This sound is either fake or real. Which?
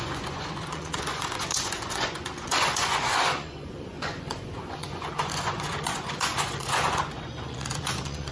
fake